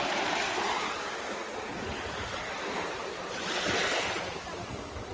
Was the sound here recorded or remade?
recorded